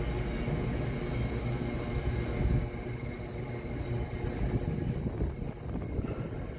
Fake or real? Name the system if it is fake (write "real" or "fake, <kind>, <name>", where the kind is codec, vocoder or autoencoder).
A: real